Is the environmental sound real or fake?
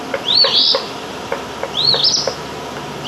real